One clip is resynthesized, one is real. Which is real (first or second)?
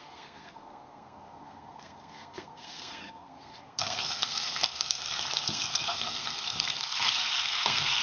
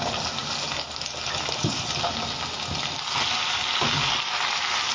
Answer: second